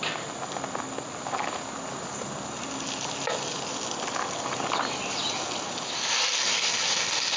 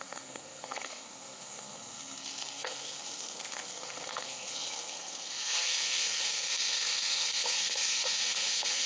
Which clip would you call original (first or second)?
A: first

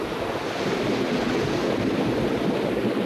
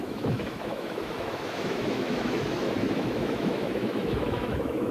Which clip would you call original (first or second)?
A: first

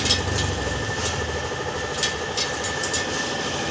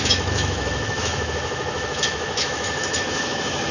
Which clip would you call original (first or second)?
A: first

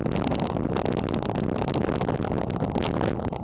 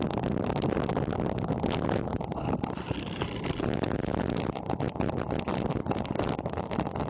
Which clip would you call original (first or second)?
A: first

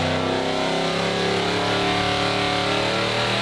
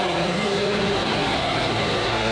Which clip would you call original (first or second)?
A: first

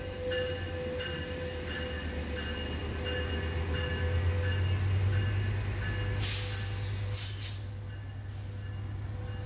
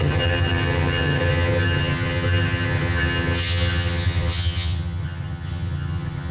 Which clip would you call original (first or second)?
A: first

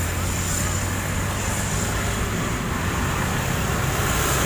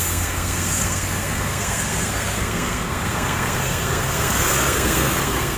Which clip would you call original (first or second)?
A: first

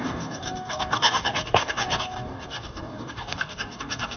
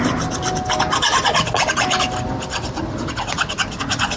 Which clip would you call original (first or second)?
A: second